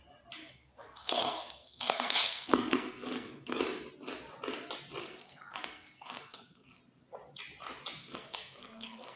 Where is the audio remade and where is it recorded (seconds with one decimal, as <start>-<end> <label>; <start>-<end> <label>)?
0.0-0.4 recorded; 0.4-3.6 remade; 3.6-5.0 recorded; 5.0-6.8 remade; 6.8-8.0 recorded; 8.0-9.2 remade